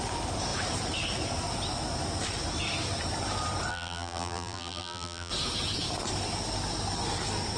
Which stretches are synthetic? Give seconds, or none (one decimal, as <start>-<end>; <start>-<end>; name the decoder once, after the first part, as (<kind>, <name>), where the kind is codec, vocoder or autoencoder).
3.7-5.3 (vocoder, BigVGAN v2)